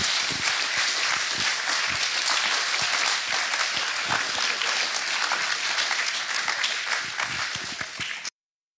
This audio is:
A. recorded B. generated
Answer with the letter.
A